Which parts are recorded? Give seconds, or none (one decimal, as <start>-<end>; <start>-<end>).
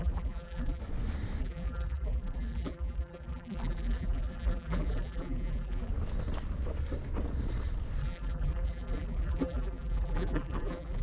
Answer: 0.8-1.4; 5.9-8.0